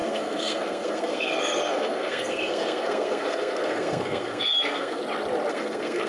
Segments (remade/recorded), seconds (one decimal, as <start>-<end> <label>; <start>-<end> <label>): 0.0-5.0 remade; 5.0-5.5 recorded; 5.5-6.1 remade

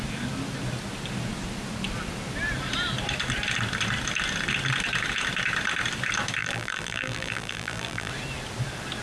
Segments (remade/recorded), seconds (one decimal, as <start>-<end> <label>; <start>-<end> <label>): 0.0-6.4 recorded; 6.4-8.1 remade; 8.1-9.0 recorded

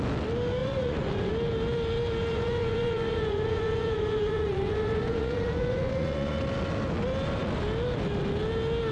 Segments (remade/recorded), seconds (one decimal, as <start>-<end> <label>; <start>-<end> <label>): 0.0-0.6 recorded; 0.6-1.3 remade; 1.3-2.3 recorded; 2.3-6.4 remade; 6.4-8.9 recorded